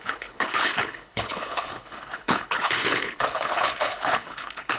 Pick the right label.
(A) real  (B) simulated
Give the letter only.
B